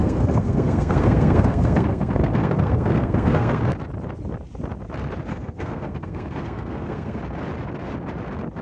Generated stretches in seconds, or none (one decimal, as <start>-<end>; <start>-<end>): 0.0-3.6; 5.3-7.2